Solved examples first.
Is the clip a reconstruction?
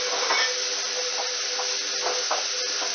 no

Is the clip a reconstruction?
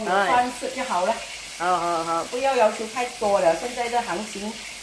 no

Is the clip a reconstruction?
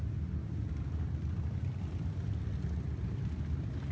no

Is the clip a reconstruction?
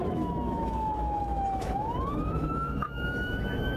yes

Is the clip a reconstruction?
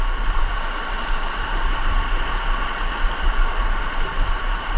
no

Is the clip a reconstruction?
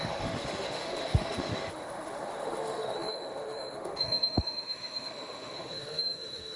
yes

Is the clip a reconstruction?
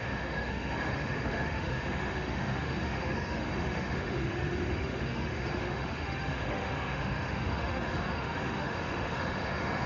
yes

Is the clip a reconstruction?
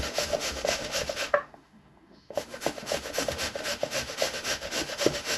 yes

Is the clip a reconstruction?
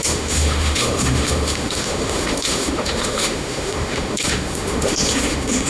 yes